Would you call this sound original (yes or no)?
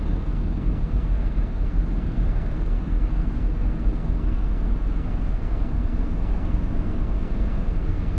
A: no